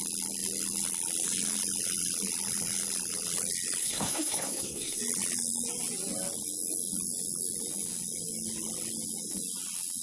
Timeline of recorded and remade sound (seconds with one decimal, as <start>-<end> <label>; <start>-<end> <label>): 0.0-3.8 recorded; 3.8-5.0 remade; 5.0-10.0 recorded

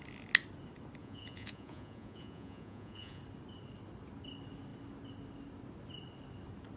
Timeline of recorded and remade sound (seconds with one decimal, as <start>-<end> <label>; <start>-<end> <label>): 0.0-1.0 recorded; 1.0-3.2 remade; 3.2-6.8 recorded

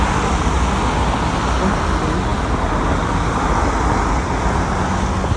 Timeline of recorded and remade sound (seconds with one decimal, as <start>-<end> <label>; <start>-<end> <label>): 0.0-5.4 recorded

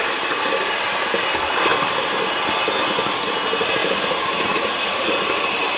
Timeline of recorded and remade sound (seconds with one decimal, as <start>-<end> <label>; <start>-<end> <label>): 0.0-3.8 recorded; 3.8-5.2 remade; 5.2-5.8 recorded

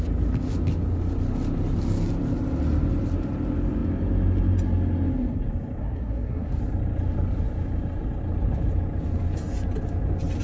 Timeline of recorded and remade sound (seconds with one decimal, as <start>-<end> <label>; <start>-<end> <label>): 0.0-5.8 recorded; 5.8-6.6 remade; 6.6-10.4 recorded

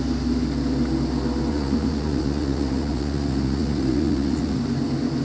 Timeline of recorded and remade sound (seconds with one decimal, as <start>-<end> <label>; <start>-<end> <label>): 0.0-1.5 recorded; 1.5-4.6 remade; 4.6-5.2 recorded

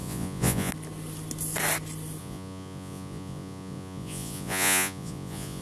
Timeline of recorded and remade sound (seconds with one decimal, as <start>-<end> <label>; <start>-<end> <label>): 0.0-0.7 remade; 0.7-2.2 recorded; 2.2-5.6 remade

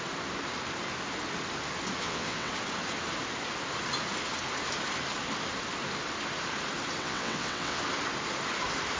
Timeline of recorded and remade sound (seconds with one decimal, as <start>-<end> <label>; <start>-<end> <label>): 0.0-2.0 recorded; 2.0-2.5 remade; 2.5-7.0 recorded; 7.0-7.8 remade; 7.8-9.0 recorded